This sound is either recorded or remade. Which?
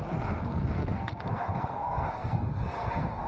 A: remade